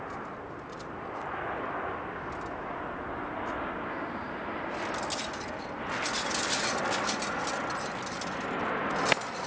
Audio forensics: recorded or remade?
recorded